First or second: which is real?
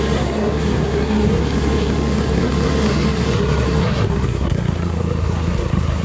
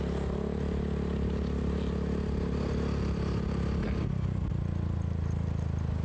second